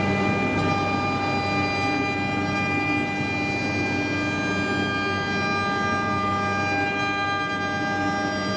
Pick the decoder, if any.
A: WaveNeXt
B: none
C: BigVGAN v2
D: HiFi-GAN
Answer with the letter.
B